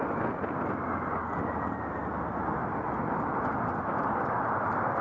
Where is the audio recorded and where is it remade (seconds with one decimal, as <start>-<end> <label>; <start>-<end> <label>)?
0.0-5.0 recorded